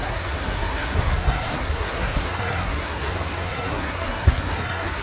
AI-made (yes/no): yes